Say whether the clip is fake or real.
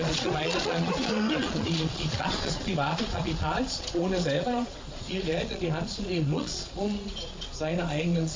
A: fake